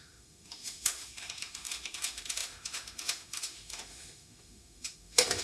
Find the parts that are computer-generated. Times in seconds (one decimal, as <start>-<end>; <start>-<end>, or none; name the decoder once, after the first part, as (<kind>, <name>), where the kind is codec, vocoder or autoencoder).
0.0-5.4 (autoencoder, DAC-VAE)